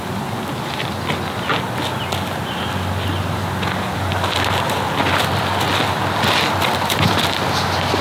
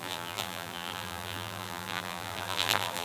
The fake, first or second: second